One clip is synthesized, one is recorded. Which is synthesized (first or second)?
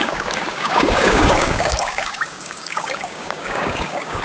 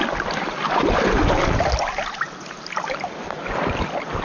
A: first